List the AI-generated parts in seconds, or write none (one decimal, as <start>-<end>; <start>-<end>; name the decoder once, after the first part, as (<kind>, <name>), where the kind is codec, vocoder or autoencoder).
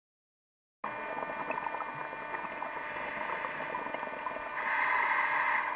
none